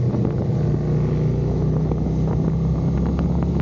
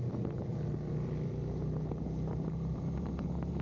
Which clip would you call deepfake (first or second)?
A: second